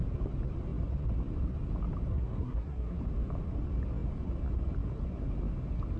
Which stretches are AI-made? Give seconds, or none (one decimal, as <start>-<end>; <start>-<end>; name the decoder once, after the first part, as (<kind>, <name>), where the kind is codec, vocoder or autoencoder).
2.1-3.0 (codec, SNAC)